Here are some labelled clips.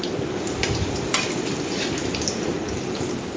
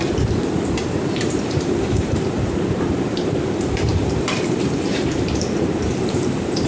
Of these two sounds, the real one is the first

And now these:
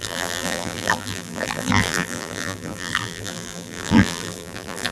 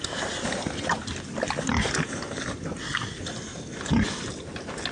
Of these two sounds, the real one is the second